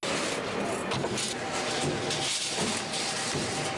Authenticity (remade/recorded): recorded